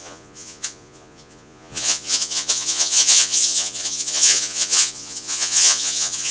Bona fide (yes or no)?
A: no